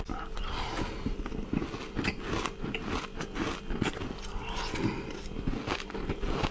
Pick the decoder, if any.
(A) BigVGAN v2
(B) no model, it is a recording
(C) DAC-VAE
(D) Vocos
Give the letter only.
B